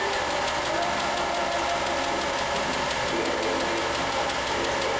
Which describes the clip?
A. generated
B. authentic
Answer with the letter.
B